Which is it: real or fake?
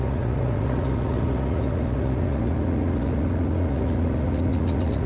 fake